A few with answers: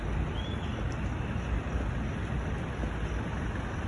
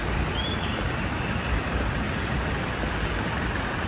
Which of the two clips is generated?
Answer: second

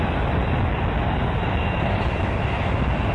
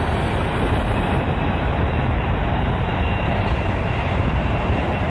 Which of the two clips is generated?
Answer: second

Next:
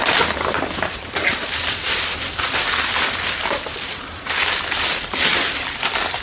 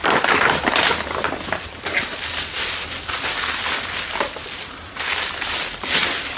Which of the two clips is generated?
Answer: first